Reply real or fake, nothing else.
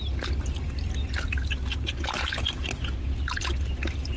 real